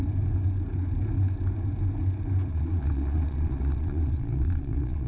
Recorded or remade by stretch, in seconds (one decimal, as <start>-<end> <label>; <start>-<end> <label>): 0.0-2.5 recorded; 2.5-5.1 remade